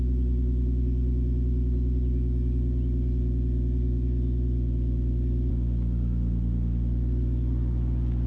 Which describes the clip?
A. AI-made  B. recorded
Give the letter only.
B